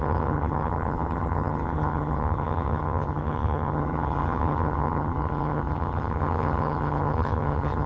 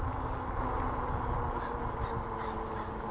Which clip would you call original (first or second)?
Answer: second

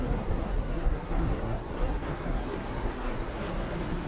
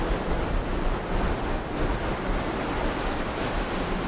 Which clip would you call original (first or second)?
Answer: second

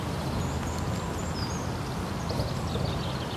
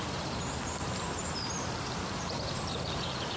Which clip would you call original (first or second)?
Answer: first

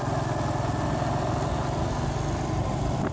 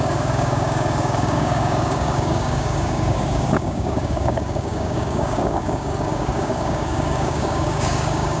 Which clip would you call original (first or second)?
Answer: first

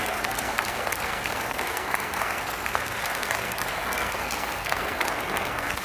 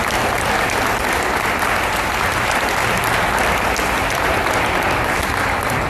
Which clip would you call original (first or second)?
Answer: second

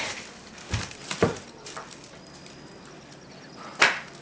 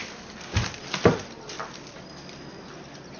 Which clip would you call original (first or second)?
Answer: second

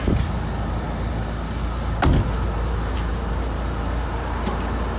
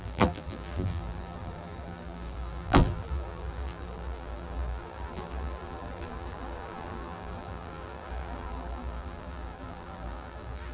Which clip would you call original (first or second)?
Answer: first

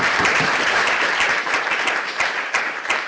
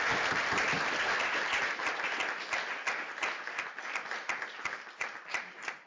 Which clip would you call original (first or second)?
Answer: second